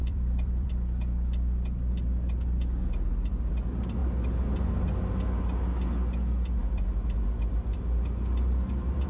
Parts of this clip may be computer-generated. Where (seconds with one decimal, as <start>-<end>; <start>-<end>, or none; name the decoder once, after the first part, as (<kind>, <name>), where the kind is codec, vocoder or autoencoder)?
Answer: 0.0-0.7 (vocoder, BigVGAN v2)